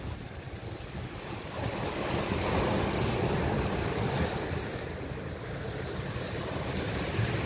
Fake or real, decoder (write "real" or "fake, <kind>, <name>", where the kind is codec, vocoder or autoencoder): real